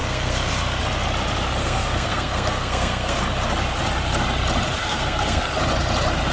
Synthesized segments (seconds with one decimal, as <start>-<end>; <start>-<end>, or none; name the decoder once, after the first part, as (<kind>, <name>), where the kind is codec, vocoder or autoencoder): 0.0-0.8 (codec, SNAC); 1.6-3.2; 4.8-5.5